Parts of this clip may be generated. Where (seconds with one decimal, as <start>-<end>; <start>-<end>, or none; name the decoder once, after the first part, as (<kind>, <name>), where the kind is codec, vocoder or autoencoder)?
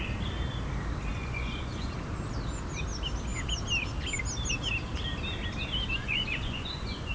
1.1-1.9 (vocoder, Vocos); 5.9-7.1